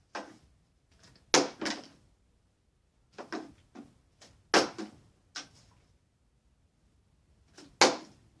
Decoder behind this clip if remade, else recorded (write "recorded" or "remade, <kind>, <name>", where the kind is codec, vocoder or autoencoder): recorded